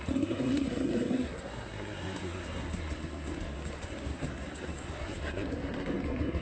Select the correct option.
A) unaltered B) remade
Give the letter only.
B